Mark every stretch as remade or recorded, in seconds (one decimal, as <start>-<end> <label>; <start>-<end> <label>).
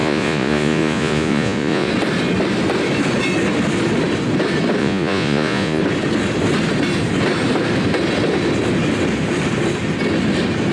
0.0-1.9 remade; 1.9-4.8 recorded; 4.8-5.8 remade; 5.8-10.7 recorded